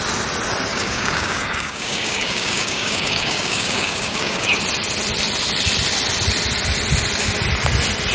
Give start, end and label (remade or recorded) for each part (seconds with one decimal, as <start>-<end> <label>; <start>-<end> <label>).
0.0-0.7 recorded; 0.7-4.6 remade; 4.6-8.1 recorded